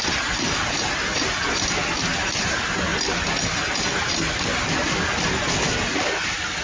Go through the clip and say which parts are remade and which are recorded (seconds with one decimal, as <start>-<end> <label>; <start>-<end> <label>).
0.0-6.6 recorded